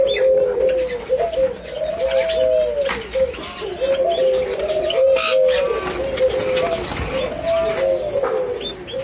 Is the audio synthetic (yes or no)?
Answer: no